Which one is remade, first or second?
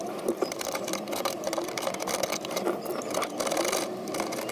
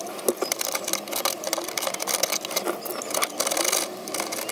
first